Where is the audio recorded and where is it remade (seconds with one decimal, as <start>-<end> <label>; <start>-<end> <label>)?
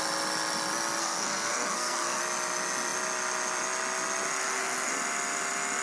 0.0-1.0 recorded; 1.0-2.2 remade; 2.2-4.4 recorded; 4.4-4.9 remade; 4.9-5.8 recorded